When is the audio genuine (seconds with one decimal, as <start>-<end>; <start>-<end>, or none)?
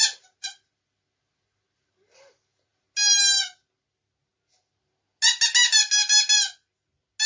0.0-7.3